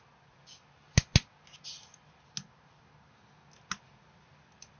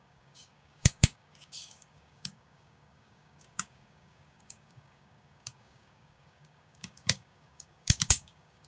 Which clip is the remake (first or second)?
second